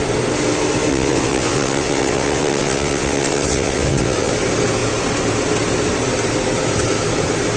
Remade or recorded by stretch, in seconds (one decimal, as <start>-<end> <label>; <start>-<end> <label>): 0.0-0.9 recorded; 0.9-4.3 remade; 4.3-7.6 recorded